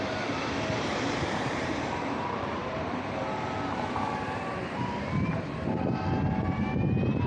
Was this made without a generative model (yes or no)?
no